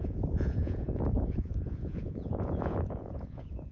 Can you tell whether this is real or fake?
fake